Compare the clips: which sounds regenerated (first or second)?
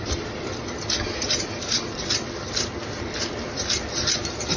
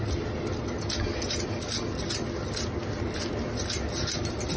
first